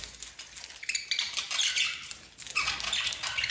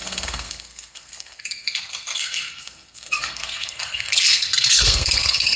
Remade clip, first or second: second